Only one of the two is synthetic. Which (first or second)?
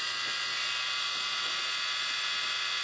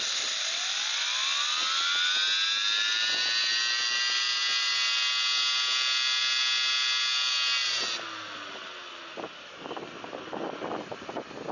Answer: first